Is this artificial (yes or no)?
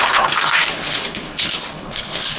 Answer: yes